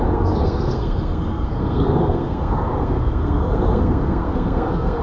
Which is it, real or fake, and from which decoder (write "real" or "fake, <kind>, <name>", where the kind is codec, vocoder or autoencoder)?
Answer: fake, codec, SNAC